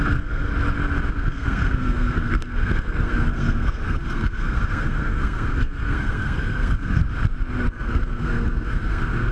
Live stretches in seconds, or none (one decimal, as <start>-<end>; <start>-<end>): 0.5-1.1; 7.0-7.7